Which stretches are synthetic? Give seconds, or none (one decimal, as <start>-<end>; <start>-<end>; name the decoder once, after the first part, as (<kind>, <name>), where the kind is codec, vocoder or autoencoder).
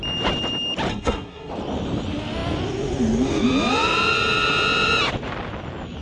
0.9-1.5 (codec, SNAC)